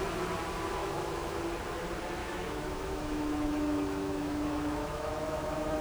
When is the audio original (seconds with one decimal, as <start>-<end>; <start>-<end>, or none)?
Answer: 0.0-0.8; 1.4-2.2